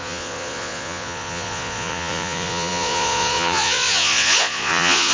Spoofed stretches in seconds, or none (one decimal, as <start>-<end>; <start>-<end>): 0.0-5.1